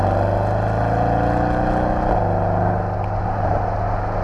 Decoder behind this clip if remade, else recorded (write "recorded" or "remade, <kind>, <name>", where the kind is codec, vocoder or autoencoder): recorded